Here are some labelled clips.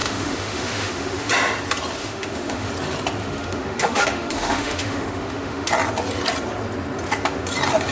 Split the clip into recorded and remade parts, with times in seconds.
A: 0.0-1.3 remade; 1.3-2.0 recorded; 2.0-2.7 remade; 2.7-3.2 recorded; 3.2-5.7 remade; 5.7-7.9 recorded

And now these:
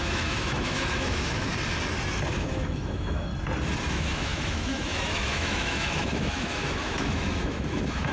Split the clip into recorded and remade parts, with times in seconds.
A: 0.0-1.5 remade; 1.5-2.3 recorded; 2.3-3.3 remade; 3.3-3.9 recorded; 3.9-8.1 remade

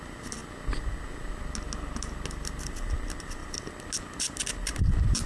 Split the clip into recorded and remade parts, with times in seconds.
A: 0.0-5.3 recorded

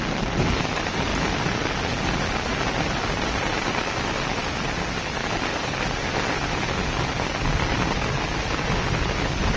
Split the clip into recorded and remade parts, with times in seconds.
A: 0.0-9.6 recorded

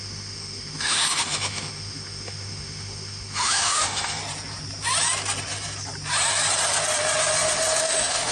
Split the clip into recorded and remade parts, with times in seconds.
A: 0.0-4.2 remade; 4.2-7.8 recorded; 7.8-8.3 remade

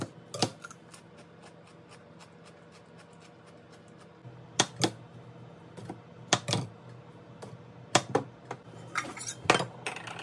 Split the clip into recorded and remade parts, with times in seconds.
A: 0.0-10.2 recorded

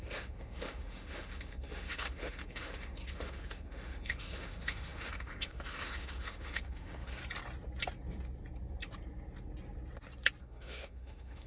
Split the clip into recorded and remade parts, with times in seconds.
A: 0.0-7.2 remade; 7.2-10.4 recorded; 10.4-11.5 remade